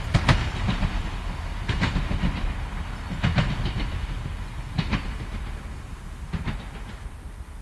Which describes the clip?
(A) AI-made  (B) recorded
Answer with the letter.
B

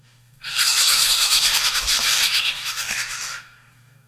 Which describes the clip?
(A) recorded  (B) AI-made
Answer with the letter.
B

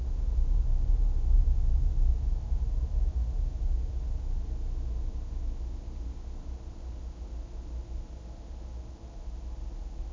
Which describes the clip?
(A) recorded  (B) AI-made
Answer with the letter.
A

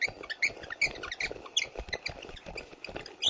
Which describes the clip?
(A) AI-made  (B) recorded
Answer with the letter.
B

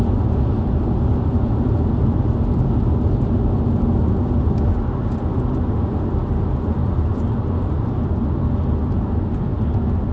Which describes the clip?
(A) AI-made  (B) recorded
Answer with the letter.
B